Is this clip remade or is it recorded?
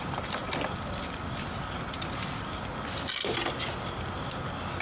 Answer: recorded